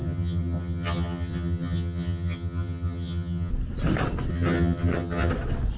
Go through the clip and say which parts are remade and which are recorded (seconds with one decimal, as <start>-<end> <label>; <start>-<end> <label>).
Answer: 0.0-3.5 remade; 3.5-4.3 recorded; 4.3-5.3 remade; 5.3-5.8 recorded